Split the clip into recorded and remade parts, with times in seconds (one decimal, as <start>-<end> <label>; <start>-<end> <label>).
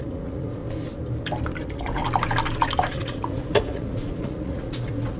0.0-0.6 remade; 0.6-1.6 recorded; 1.6-2.0 remade; 2.0-2.9 recorded; 2.9-5.2 remade